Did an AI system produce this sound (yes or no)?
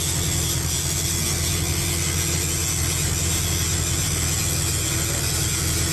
no